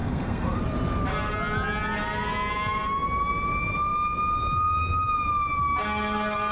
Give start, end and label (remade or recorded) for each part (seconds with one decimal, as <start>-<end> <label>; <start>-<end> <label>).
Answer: 0.0-0.6 remade; 0.6-6.5 recorded

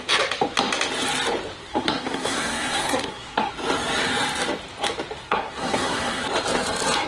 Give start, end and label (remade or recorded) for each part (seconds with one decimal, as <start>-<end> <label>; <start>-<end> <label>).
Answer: 0.0-1.6 recorded; 1.6-3.5 remade; 3.5-5.2 recorded; 5.2-6.2 remade; 6.2-7.1 recorded

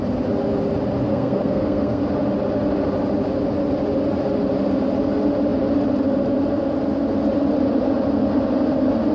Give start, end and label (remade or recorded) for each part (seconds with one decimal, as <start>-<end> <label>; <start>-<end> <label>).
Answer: 0.0-1.1 recorded; 1.1-2.0 remade; 2.0-9.1 recorded

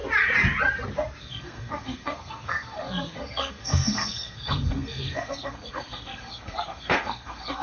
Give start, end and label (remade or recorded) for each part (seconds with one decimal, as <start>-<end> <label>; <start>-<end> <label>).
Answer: 0.0-1.2 recorded; 1.2-7.6 remade